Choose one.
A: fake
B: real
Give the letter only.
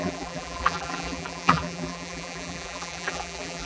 A